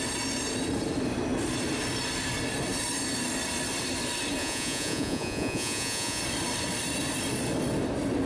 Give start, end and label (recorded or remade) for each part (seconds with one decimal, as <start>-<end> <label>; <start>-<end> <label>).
0.0-4.4 recorded; 4.4-6.2 remade; 6.2-8.3 recorded

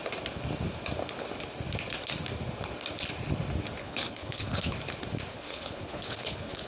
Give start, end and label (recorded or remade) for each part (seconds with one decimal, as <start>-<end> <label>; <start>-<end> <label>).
0.0-3.8 recorded; 3.8-4.8 remade; 4.8-5.3 recorded; 5.3-6.7 remade